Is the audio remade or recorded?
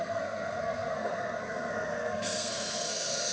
remade